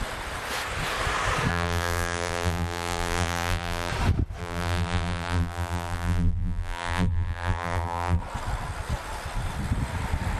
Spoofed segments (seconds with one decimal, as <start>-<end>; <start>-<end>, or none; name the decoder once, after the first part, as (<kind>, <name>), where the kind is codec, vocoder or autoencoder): 1.5-3.9 (vocoder, BigVGAN v2); 4.4-8.2